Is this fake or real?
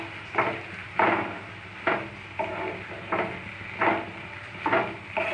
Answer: real